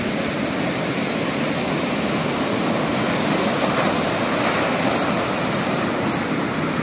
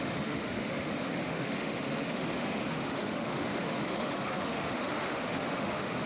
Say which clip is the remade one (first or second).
second